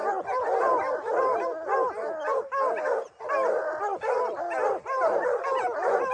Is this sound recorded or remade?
recorded